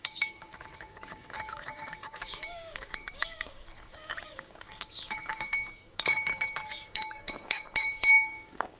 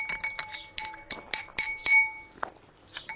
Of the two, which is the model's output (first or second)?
first